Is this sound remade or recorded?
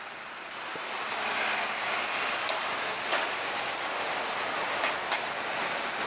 recorded